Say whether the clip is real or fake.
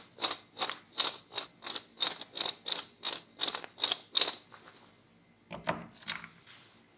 real